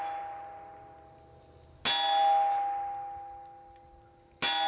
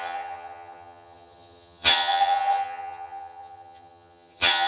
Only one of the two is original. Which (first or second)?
first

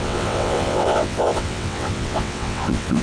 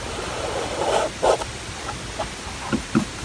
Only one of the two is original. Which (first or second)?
second